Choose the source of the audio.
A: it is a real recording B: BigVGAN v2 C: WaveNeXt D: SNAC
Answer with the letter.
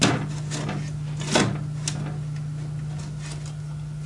A